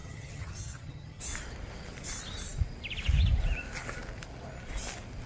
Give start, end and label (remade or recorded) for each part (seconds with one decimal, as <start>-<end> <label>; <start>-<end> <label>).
0.0-1.2 remade; 1.2-5.3 recorded